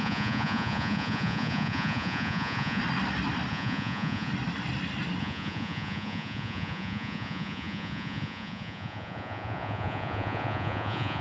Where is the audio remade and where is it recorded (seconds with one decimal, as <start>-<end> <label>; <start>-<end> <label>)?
0.0-2.8 remade; 2.8-3.5 recorded; 3.5-4.3 remade; 4.3-5.2 recorded; 5.2-11.2 remade